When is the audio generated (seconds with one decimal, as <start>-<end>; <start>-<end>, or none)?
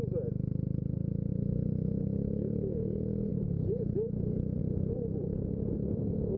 1.3-2.0; 3.3-4.6; 5.2-6.0